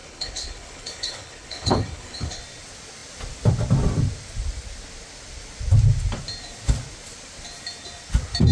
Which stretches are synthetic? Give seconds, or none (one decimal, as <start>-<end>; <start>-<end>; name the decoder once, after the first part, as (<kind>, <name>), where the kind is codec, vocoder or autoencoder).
0.0-2.4 (codec, HILCodec)